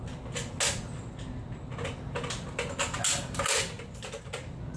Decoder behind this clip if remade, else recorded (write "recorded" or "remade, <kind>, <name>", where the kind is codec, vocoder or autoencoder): recorded